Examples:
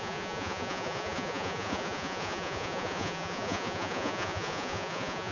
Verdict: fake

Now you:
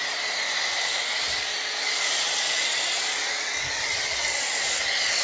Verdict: real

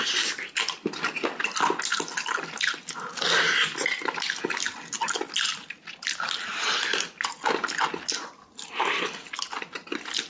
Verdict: real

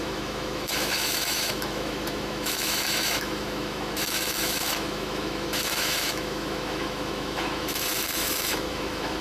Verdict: fake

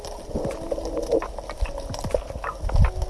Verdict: real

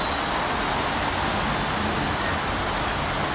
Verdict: real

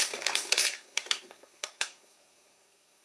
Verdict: fake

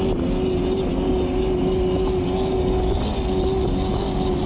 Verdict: real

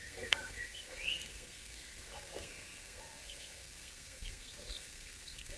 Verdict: fake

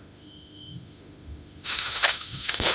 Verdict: fake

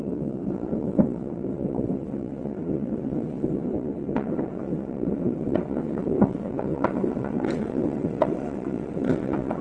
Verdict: fake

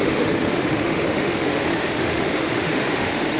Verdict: fake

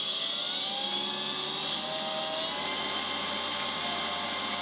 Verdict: real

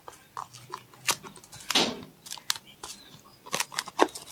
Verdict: real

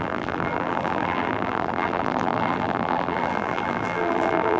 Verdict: fake